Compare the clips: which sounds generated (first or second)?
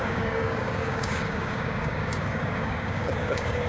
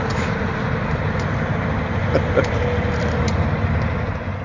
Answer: first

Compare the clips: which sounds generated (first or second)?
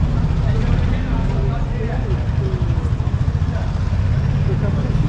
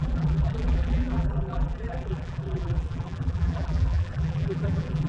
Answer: second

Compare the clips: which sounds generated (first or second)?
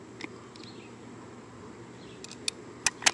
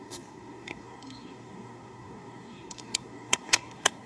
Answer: second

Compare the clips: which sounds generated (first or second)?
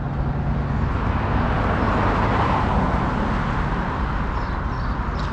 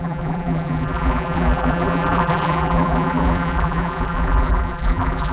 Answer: second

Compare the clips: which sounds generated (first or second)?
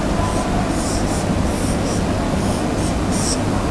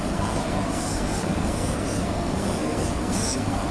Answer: second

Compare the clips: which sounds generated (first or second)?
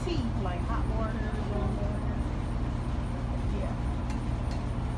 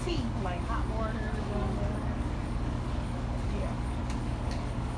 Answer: second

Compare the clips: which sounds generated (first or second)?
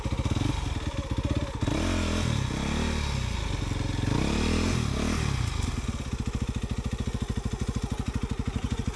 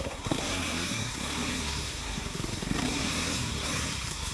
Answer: second